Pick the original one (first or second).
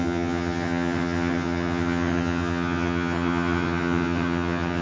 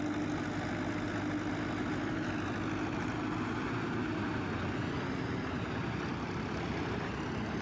second